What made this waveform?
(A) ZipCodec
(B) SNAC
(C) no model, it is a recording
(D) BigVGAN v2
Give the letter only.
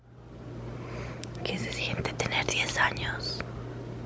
C